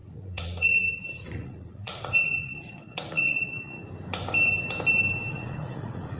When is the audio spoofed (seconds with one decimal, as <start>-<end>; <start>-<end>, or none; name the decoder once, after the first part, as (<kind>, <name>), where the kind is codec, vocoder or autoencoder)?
0.0-3.8 (vocoder, Vocos); 5.3-6.2